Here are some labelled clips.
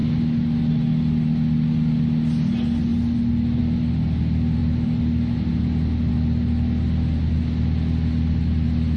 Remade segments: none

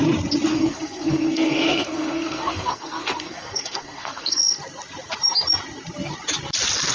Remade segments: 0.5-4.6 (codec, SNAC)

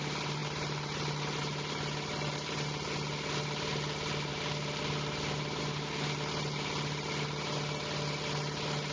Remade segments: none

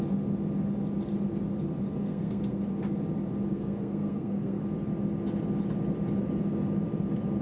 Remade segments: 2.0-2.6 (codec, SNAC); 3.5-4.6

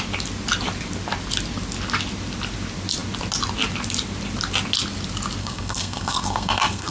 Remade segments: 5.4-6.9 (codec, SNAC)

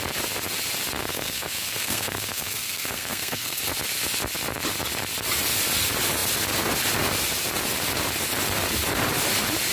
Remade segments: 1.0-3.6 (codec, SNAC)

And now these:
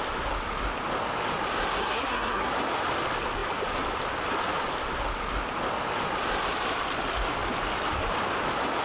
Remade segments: 1.8-2.5 (codec, SNAC)